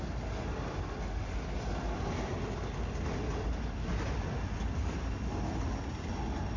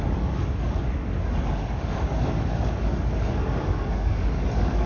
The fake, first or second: second